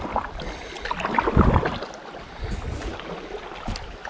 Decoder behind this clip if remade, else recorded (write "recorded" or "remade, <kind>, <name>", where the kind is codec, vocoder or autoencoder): recorded